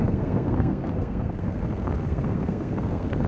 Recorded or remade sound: remade